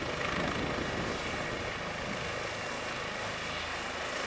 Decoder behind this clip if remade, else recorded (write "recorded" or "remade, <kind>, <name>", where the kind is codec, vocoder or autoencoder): recorded